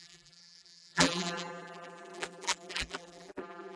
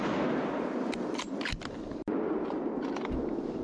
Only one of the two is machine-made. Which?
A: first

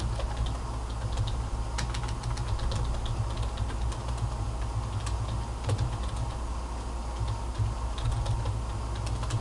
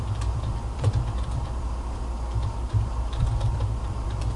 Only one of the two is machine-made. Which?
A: second